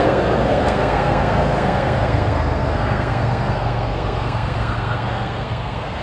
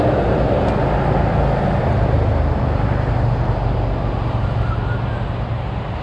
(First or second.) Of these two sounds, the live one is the second